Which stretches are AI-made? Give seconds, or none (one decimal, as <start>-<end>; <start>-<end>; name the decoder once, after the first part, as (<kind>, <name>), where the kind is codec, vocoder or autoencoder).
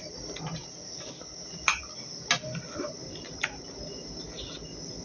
none